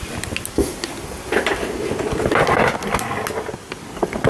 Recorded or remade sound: recorded